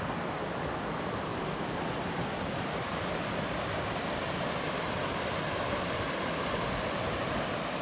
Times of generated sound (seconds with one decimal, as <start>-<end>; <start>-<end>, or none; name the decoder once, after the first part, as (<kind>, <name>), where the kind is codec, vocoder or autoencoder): 0.0-7.8 (vocoder, BigVGAN v2)